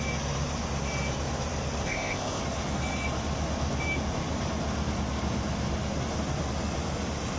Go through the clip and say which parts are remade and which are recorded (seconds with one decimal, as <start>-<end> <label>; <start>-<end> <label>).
0.0-1.8 recorded; 1.8-2.4 remade; 2.4-7.4 recorded

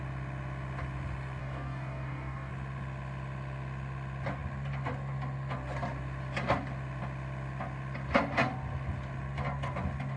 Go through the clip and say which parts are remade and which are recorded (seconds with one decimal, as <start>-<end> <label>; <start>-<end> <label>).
0.0-1.4 recorded; 1.4-2.5 remade; 2.5-10.2 recorded

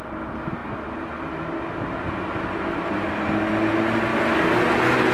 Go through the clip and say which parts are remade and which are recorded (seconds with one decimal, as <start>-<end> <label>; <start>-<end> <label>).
0.0-5.1 recorded

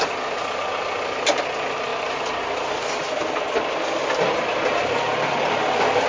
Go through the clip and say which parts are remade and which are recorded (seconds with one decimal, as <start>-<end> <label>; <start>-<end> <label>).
0.0-6.1 recorded

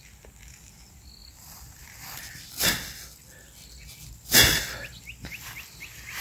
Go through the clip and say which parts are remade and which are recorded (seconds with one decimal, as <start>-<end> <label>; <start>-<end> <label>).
0.0-1.2 recorded; 1.2-2.7 remade; 2.7-6.2 recorded

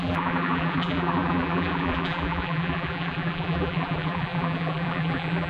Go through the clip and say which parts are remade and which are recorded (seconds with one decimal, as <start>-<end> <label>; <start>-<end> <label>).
0.0-5.5 remade